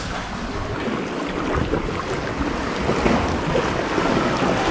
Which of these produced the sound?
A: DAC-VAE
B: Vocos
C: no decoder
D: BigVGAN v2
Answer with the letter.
C